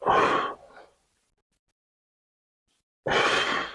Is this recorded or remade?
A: recorded